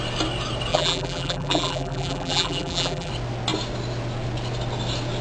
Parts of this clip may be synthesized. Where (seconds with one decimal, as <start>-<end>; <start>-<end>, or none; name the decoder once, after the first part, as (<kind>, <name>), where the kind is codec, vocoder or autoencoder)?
0.7-3.1 (vocoder, BigVGAN v2)